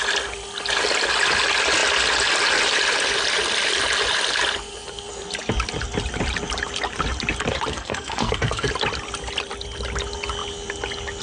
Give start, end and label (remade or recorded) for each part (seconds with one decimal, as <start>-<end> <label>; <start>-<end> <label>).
0.0-7.7 recorded; 7.7-8.7 remade; 8.7-11.2 recorded